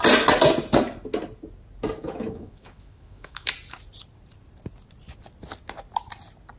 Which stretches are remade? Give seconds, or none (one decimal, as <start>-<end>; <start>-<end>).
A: 2.0-3.5